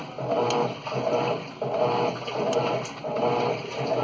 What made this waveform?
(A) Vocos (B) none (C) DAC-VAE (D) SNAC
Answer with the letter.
B